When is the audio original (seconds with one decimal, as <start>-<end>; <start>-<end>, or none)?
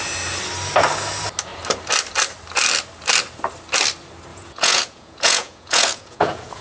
0.0-4.3